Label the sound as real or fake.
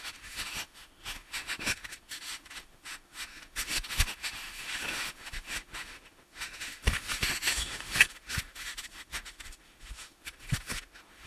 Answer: fake